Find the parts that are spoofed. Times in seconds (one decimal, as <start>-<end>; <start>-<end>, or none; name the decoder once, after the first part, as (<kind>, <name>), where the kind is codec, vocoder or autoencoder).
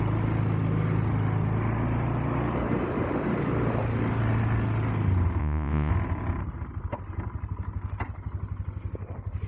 5.4-5.9 (vocoder, Vocos)